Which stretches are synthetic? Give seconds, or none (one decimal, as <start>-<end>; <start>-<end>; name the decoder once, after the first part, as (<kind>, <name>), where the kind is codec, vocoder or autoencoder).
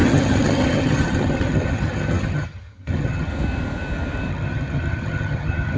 0.0-3.3 (vocoder, HiFi-GAN); 4.3-5.8